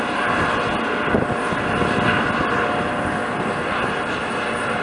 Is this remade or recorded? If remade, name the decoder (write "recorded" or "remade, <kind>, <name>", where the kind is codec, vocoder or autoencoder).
recorded